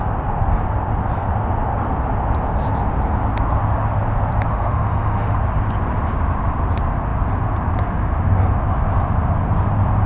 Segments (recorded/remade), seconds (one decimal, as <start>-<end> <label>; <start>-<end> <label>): 0.0-4.5 recorded; 4.5-5.4 remade; 5.4-10.1 recorded